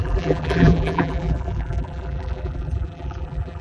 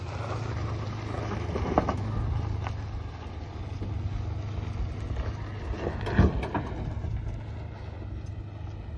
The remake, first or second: first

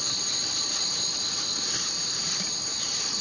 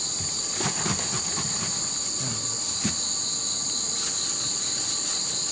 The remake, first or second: first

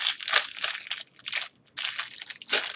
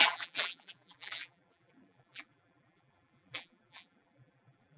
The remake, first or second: second